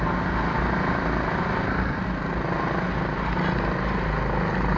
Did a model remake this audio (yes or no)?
no